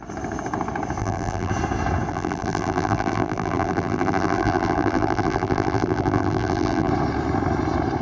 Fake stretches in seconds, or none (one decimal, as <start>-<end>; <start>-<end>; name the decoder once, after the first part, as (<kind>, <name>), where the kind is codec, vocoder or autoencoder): 1.0-1.5 (vocoder, BigVGAN v2); 2.1-6.9